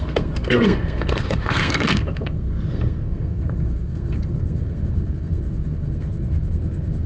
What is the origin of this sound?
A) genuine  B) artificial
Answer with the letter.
B